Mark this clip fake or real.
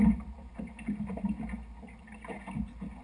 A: real